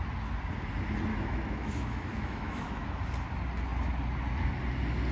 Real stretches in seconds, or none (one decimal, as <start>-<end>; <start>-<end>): 0.0-1.1; 3.0-5.1